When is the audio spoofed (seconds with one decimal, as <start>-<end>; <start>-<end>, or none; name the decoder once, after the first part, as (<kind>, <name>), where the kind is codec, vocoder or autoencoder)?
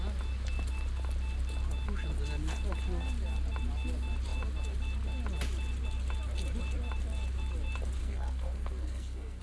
8.0-9.4 (codec, SNAC)